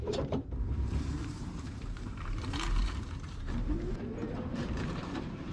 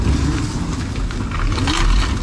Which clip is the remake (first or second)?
first